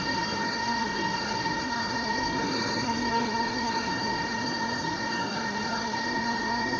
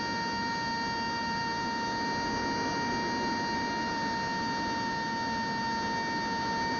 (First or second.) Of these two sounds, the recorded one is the second